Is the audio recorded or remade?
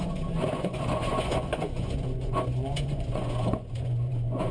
remade